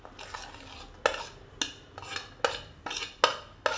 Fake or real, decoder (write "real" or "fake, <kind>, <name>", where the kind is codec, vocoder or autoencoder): real